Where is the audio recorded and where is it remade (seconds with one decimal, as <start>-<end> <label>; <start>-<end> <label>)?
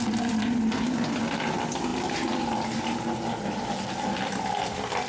0.0-5.1 recorded